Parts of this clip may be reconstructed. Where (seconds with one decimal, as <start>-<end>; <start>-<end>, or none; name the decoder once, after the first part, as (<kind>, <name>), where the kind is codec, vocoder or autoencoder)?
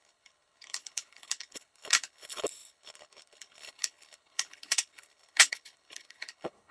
0.0-6.7 (codec, HILCodec)